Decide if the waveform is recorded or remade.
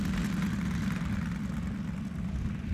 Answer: recorded